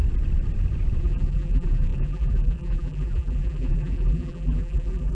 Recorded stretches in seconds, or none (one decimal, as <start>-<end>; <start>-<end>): 0.0-1.0